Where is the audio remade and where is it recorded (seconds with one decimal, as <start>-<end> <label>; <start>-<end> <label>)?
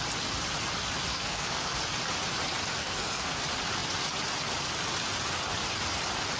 0.0-1.1 recorded; 1.1-1.8 remade; 1.8-2.8 recorded; 2.8-3.4 remade; 3.4-6.4 recorded